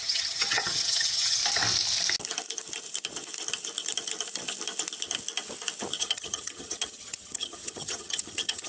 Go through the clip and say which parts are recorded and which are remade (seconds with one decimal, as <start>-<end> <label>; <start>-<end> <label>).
0.0-1.4 remade; 1.4-6.0 recorded; 6.0-8.7 remade